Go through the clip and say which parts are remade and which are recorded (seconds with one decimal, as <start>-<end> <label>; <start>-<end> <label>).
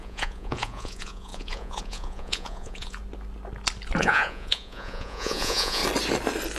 0.0-3.0 remade; 3.0-4.0 recorded; 4.0-5.8 remade; 5.8-6.6 recorded